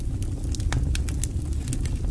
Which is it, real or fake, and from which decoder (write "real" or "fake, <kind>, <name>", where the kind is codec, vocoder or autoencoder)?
real